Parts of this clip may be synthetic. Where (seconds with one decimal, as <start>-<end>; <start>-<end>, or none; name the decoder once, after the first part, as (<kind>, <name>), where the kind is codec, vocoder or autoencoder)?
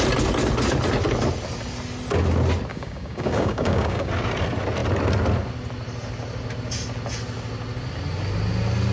2.7-4.1 (codec, DAC)